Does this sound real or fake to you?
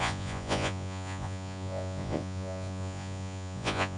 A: fake